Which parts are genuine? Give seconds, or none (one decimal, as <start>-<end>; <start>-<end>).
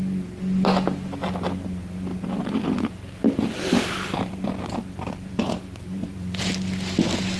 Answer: 0.0-2.1; 6.5-7.4